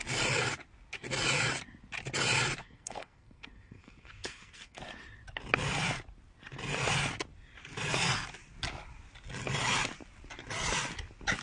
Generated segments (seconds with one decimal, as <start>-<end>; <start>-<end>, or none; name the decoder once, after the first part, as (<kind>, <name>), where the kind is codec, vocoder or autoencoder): 2.6-4.8 (codec, SNAC)